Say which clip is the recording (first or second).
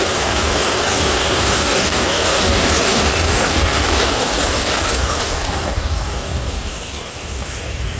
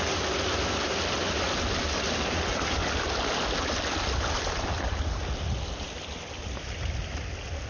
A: second